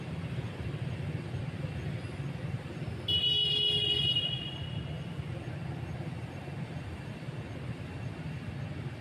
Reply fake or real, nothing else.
real